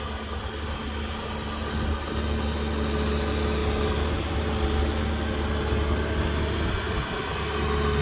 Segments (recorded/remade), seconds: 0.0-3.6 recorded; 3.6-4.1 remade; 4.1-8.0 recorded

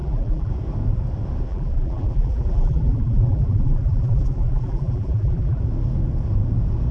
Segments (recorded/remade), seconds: 0.0-0.5 remade; 0.5-1.5 recorded; 1.5-5.6 remade; 5.6-6.9 recorded

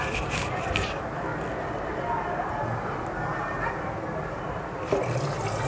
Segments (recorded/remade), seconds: 0.0-5.7 recorded

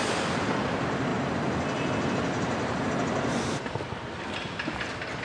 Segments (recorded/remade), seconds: 0.0-5.2 recorded

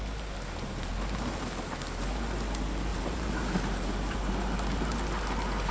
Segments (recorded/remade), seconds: 0.0-2.9 recorded; 2.9-4.3 remade; 4.3-5.7 recorded

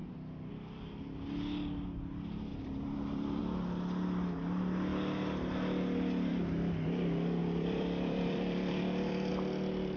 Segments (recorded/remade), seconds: 0.0-2.5 recorded; 2.5-3.4 remade; 3.4-7.4 recorded; 7.4-9.3 remade; 9.3-10.0 recorded